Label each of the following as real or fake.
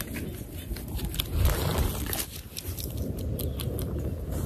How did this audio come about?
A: real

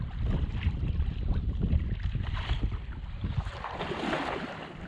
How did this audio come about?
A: real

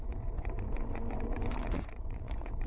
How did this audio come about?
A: fake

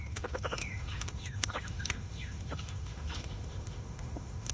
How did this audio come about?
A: fake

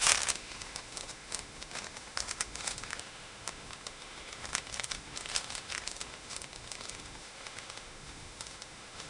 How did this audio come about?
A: fake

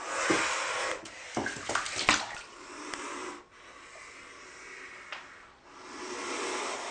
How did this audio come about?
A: real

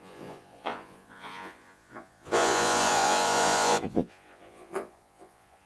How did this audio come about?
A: fake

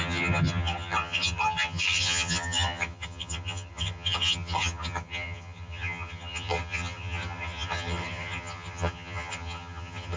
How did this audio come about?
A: fake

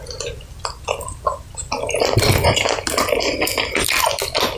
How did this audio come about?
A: real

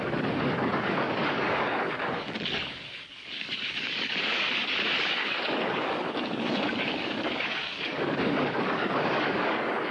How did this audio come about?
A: fake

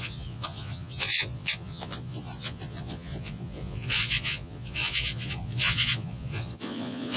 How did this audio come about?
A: fake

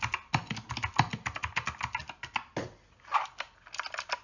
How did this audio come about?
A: real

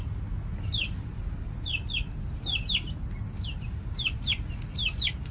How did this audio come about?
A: real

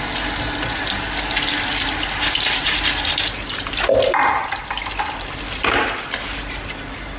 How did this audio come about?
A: real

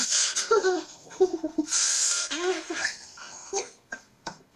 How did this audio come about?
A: fake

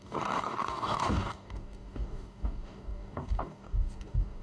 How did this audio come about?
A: fake